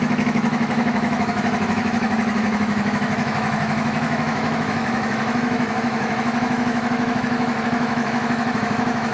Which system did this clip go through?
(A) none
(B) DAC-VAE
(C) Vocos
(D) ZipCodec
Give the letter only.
B